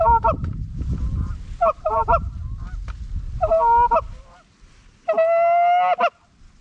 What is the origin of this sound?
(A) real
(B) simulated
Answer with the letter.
A